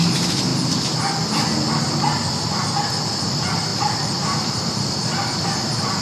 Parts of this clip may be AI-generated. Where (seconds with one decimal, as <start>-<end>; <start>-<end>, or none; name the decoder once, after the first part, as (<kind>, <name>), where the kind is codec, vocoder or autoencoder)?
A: none